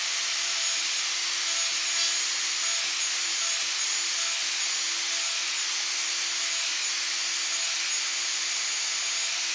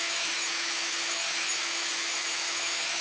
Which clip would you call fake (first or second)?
second